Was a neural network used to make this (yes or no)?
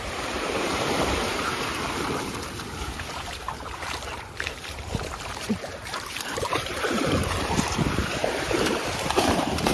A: yes